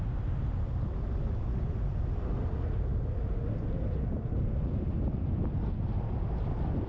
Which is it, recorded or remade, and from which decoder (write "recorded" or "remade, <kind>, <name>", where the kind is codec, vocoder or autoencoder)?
recorded